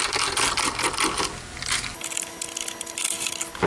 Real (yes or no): yes